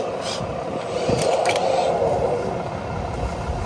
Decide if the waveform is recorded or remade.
recorded